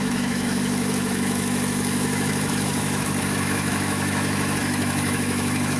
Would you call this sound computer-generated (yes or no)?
yes